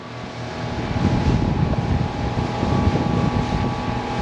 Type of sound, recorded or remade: recorded